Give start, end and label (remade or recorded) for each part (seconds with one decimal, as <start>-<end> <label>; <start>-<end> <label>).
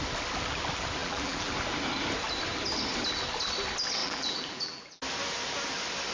0.0-1.0 recorded; 1.0-1.5 remade; 1.5-4.0 recorded; 4.0-5.0 remade; 5.0-6.1 recorded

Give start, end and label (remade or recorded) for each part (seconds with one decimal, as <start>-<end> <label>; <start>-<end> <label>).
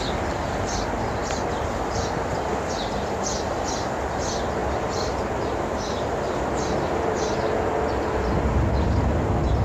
0.0-9.6 recorded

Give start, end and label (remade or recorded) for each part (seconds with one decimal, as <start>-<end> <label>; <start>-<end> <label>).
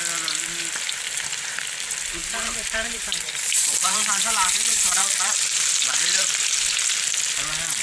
0.0-2.2 recorded; 2.2-6.7 remade; 6.7-7.8 recorded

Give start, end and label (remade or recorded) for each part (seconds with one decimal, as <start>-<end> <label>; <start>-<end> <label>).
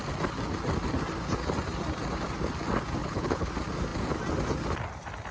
0.0-3.0 recorded; 3.0-3.5 remade; 3.5-5.3 recorded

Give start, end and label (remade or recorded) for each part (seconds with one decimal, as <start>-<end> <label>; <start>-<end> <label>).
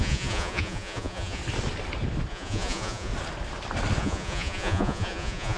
0.0-1.4 remade; 1.4-2.3 recorded; 2.3-3.1 remade; 3.1-4.0 recorded; 4.0-5.6 remade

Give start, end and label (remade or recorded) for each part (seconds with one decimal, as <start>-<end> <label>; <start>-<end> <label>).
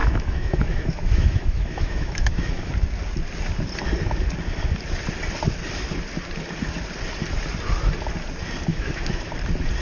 0.0-2.7 remade; 2.7-8.7 recorded; 8.7-9.3 remade; 9.3-9.8 recorded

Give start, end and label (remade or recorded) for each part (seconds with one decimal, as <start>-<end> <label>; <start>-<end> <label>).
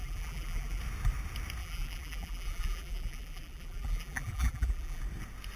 0.0-0.8 remade; 0.8-1.6 recorded; 1.6-5.0 remade; 5.0-5.6 recorded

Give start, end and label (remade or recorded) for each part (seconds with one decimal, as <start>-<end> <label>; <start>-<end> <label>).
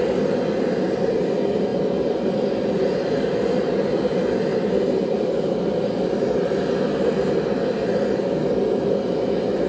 0.0-9.7 recorded